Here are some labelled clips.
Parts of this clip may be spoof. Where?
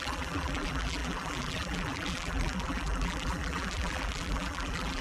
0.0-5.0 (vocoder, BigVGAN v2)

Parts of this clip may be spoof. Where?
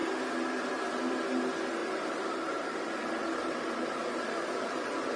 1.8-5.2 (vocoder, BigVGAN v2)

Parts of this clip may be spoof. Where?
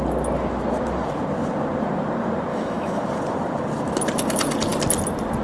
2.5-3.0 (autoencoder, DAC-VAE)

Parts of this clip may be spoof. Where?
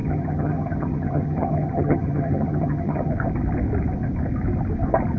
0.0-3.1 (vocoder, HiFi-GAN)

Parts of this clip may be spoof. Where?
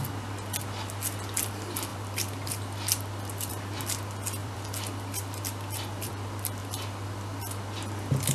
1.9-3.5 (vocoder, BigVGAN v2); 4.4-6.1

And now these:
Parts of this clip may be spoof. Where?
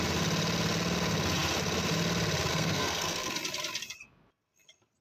2.5-3.3 (codec, SNAC)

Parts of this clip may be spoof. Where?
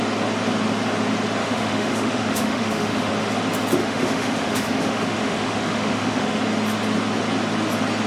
1.4-3.1 (autoencoder, DAC-VAE); 3.8-6.4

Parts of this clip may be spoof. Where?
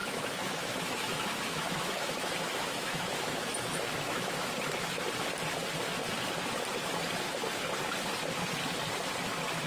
0.0-4.5 (autoencoder, DAC-VAE)